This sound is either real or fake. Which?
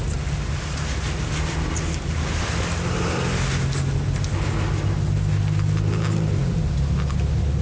real